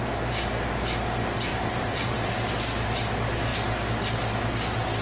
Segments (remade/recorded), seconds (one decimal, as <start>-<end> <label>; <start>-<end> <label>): 0.0-1.5 recorded; 1.5-2.5 remade; 2.5-5.0 recorded